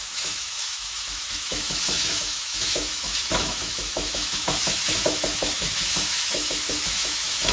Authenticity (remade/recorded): remade